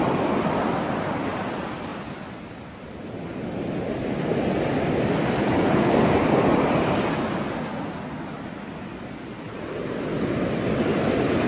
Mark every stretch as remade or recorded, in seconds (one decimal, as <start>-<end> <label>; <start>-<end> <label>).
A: 0.0-5.4 recorded; 5.4-6.1 remade; 6.1-11.5 recorded